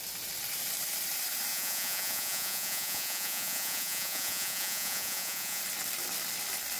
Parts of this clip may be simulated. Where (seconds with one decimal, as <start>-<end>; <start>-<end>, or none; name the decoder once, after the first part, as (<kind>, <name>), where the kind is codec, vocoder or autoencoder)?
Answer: 1.5-5.6 (vocoder, Vocos)